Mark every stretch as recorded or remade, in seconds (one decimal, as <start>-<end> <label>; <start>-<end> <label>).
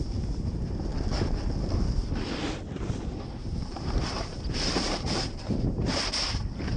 0.0-0.9 remade; 0.9-3.1 recorded; 3.1-6.8 remade